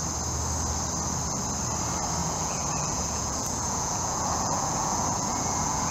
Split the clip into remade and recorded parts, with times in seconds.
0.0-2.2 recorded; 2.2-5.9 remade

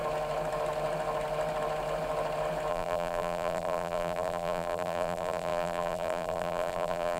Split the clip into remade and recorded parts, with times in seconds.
0.0-2.7 recorded; 2.7-7.2 remade

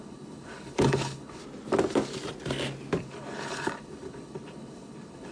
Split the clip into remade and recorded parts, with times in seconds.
0.0-1.4 remade; 1.4-3.0 recorded; 3.0-5.3 remade

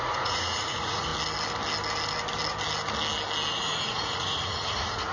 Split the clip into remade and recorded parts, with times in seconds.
0.0-1.1 remade; 1.1-3.5 recorded; 3.5-5.1 remade